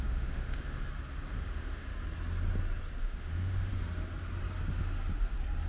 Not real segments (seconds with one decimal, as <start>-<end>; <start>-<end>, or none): 0.0-0.8; 1.4-1.9; 3.0-3.7